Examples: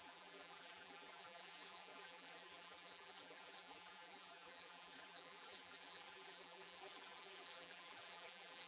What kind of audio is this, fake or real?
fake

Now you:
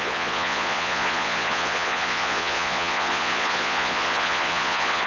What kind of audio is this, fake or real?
fake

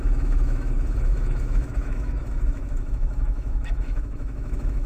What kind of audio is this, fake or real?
fake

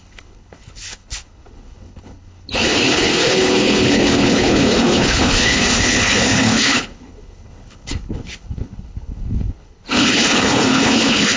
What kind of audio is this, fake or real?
fake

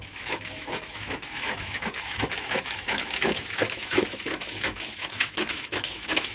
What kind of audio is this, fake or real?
fake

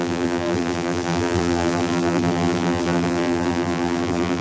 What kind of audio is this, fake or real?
fake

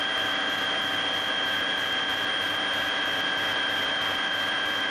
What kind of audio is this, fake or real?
fake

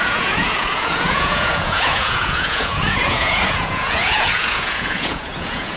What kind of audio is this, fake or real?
fake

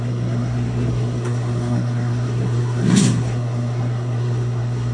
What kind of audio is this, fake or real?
fake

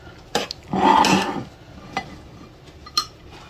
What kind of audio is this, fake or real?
real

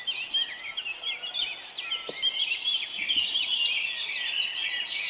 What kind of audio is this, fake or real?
real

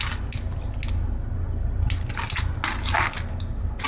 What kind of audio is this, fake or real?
real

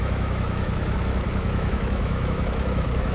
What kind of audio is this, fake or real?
fake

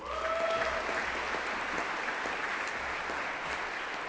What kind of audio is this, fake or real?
real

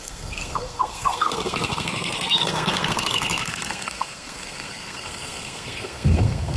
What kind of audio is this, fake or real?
fake